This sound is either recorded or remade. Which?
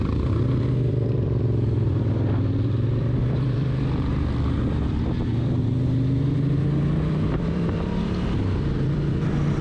remade